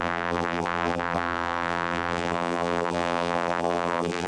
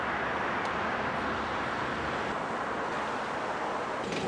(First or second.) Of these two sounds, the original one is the second